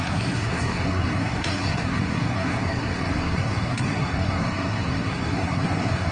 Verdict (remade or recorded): remade